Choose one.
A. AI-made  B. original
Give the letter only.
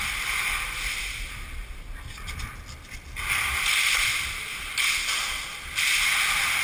B